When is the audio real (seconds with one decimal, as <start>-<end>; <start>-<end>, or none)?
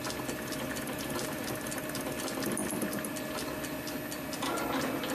0.0-5.1